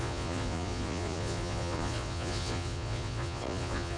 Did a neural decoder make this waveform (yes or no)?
yes